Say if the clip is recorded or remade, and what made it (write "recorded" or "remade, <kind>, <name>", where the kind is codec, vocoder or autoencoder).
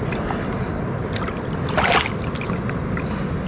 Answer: recorded